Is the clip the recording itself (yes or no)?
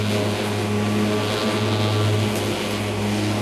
yes